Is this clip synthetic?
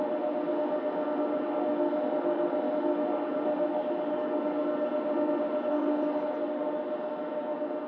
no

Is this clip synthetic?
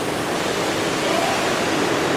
no